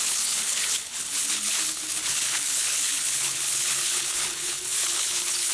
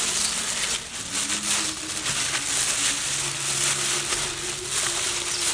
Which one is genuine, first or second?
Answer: second